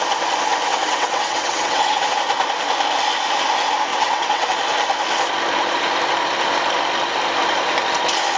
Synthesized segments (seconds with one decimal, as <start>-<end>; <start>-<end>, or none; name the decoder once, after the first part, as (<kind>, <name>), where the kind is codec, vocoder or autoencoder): 0.7-2.2 (vocoder, WaveNeXt); 3.9-4.5